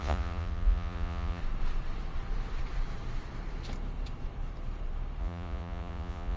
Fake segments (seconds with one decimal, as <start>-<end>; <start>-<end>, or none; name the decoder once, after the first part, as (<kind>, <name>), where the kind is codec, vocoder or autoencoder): 0.0-1.4 (vocoder, Vocos); 5.2-6.4